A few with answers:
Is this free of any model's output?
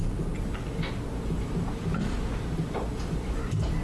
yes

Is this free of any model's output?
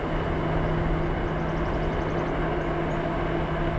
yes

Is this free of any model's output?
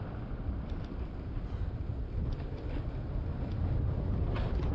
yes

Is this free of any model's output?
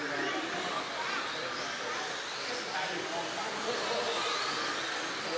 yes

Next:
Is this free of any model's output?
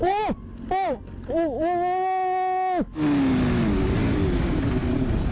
yes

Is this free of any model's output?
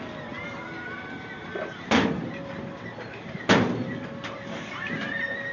yes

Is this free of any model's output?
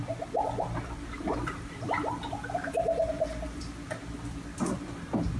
no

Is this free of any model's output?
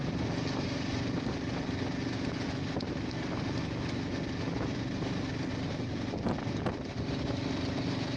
yes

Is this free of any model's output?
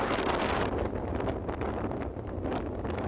yes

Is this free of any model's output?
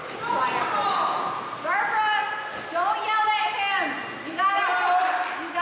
yes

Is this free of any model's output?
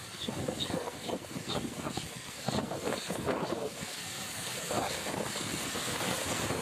no